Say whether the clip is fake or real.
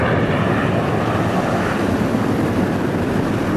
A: real